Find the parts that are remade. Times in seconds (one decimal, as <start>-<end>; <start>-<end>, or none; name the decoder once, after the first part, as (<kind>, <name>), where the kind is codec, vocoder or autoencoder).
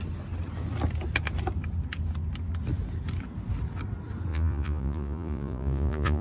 4.3-6.2 (vocoder, Vocos)